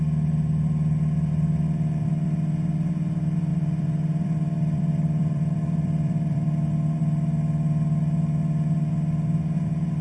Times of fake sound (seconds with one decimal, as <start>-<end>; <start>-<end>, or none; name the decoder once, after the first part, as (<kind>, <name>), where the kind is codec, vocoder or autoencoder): 3.5-7.0 (vocoder, BigVGAN v2)